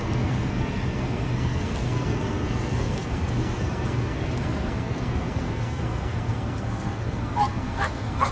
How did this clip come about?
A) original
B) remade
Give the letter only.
B